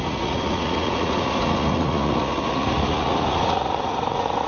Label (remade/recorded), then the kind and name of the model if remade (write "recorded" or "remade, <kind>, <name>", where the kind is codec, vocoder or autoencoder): remade, vocoder, Vocos